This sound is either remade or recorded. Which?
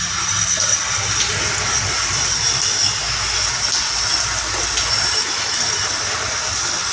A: recorded